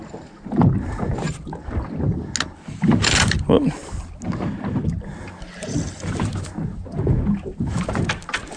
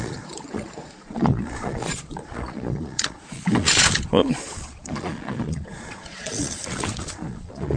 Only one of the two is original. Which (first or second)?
first